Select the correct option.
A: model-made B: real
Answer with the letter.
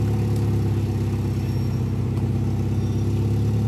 B